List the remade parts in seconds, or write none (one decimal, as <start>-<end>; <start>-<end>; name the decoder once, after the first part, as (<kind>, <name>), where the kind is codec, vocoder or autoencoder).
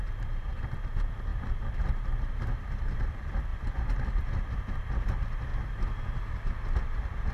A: none